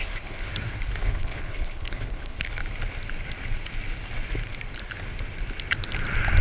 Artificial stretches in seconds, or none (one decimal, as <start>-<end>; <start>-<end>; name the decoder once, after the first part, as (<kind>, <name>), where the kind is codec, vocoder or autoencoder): 0.0-0.5 (codec, HILCodec); 1.0-2.6

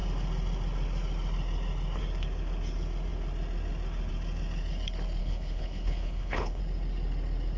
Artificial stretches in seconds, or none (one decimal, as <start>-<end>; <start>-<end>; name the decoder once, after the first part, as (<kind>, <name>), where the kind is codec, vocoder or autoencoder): 5.2-6.6 (codec, HILCodec)

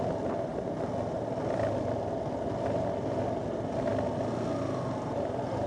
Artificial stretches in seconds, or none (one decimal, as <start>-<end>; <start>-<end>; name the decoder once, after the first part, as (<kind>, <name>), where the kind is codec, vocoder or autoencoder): none